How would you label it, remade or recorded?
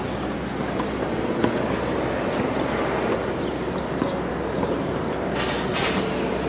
recorded